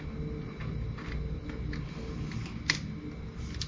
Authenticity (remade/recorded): recorded